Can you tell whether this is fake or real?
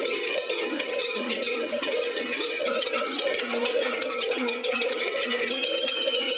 fake